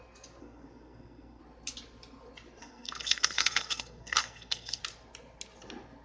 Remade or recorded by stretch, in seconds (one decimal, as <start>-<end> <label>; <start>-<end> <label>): 0.0-0.4 recorded; 0.4-1.4 remade; 1.4-2.6 recorded; 2.6-4.8 remade; 4.8-6.0 recorded